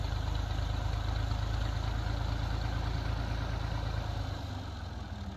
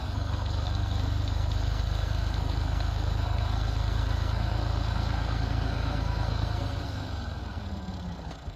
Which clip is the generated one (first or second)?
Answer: second